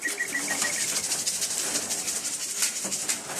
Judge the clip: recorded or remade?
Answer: recorded